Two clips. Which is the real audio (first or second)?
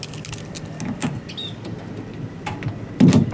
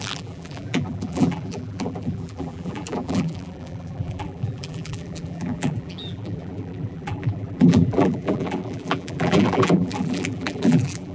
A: first